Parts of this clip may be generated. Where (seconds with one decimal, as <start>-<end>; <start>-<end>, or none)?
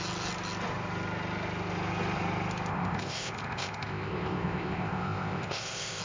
2.7-6.0